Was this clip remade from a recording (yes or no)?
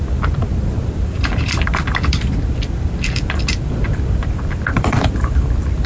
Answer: yes